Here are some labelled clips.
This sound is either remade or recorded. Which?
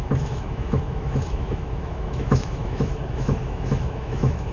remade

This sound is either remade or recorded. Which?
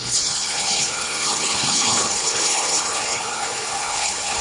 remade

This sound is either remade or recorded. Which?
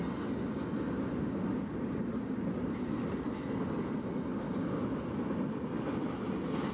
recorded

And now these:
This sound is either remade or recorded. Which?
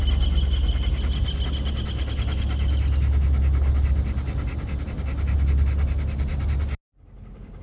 recorded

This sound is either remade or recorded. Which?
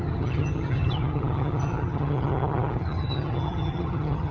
remade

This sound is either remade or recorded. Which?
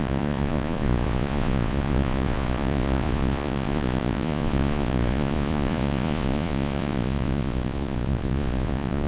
remade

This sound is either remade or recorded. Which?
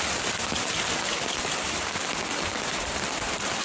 recorded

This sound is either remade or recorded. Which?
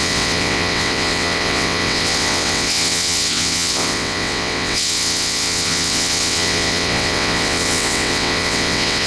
remade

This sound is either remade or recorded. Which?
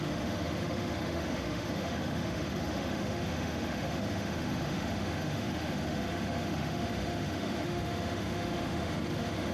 remade